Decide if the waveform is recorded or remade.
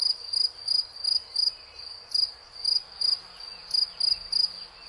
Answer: recorded